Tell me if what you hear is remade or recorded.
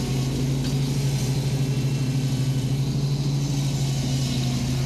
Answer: recorded